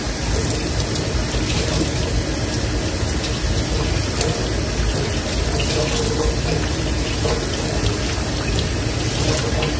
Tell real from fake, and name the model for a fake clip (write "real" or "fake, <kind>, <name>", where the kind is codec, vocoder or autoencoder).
real